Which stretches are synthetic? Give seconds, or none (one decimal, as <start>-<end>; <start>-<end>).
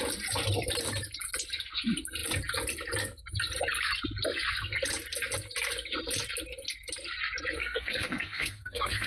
7.6-9.1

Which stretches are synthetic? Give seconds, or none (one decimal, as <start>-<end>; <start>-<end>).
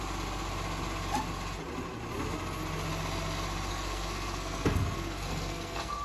3.7-6.0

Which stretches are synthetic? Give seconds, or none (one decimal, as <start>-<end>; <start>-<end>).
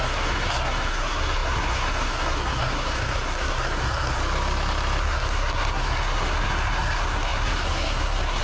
0.0-4.2; 5.0-8.4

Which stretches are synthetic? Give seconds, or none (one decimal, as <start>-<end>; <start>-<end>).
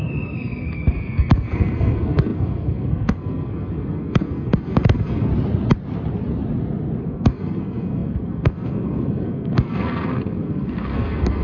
0.0-5.3; 7.0-11.4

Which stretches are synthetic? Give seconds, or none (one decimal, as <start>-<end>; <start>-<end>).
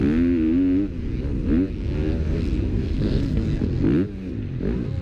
2.7-3.6